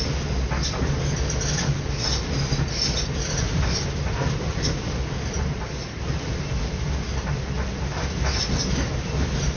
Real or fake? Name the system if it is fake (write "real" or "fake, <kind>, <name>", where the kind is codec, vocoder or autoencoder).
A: real